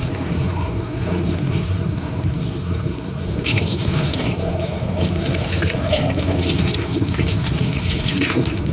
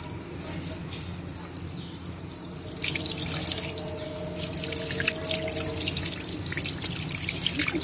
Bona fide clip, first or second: second